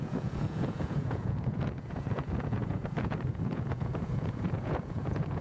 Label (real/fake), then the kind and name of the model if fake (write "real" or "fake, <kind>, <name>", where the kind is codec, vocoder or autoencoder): fake, vocoder, Vocos